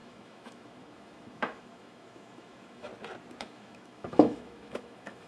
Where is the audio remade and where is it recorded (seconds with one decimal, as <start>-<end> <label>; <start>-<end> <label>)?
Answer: 0.0-2.9 remade; 2.9-3.4 recorded; 3.4-5.3 remade